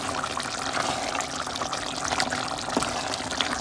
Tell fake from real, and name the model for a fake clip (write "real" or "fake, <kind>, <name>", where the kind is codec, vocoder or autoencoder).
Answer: real